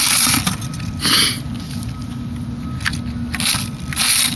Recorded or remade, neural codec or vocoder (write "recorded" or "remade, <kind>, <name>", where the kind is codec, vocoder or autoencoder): recorded